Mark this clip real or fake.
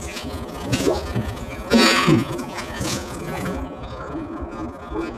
fake